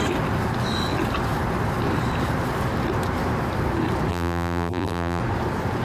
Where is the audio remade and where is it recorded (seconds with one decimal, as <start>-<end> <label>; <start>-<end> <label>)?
0.0-4.1 recorded; 4.1-5.2 remade; 5.2-5.8 recorded